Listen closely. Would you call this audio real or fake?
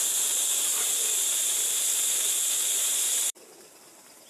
fake